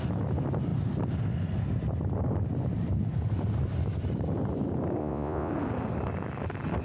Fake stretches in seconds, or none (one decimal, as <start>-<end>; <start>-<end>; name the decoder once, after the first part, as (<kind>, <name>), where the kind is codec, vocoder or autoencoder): 5.0-5.5 (vocoder, Vocos)